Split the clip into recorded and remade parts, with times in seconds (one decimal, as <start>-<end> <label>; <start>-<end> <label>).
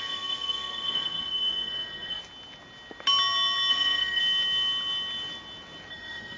0.0-2.2 remade; 2.2-3.7 recorded; 3.7-4.2 remade; 4.2-5.9 recorded; 5.9-6.4 remade